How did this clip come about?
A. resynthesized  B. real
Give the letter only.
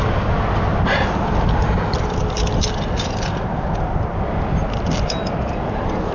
B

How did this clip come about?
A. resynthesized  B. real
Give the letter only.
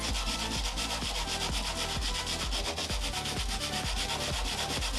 B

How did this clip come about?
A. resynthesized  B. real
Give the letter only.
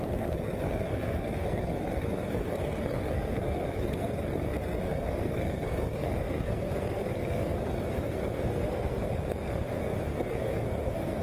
A